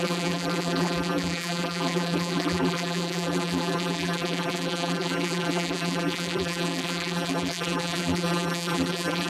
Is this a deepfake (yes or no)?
yes